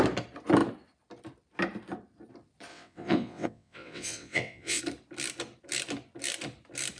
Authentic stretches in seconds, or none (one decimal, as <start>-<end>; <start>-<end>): 0.0-2.7; 4.8-7.0